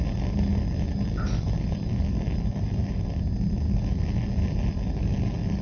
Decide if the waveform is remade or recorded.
recorded